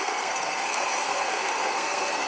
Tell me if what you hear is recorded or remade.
remade